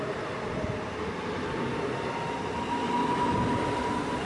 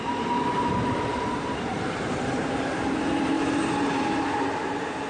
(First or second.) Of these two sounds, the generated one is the second